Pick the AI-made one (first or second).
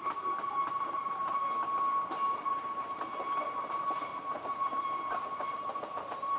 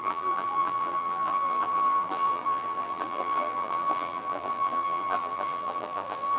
second